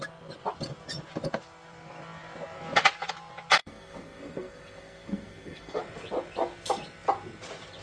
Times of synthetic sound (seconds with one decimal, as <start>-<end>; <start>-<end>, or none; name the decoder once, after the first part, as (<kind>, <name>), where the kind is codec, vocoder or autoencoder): 3.6-5.8 (codec, SNAC)